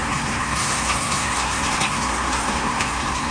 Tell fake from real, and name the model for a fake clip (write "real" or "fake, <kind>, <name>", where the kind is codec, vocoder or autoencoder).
fake, codec, SNAC